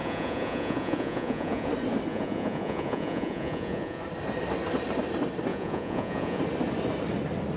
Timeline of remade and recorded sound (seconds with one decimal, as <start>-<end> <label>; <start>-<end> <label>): 0.0-1.7 remade; 1.7-2.1 recorded; 2.1-4.0 remade; 4.0-5.5 recorded; 5.5-6.4 remade; 6.4-7.6 recorded